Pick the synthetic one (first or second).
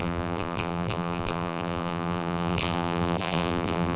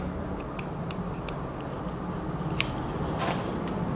first